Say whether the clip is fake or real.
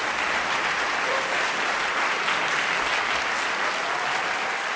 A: real